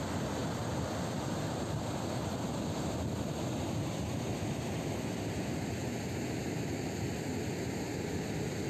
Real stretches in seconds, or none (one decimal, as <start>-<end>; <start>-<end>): 0.0-8.7